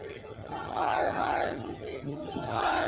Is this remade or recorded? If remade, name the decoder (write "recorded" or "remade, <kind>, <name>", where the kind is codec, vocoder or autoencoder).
remade, vocoder, HiFi-GAN